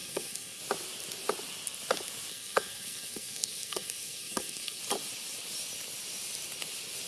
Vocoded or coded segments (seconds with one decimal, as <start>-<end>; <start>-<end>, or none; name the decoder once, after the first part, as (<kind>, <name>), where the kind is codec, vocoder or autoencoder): 0.0-0.6 (codec, SNAC); 2.3-4.8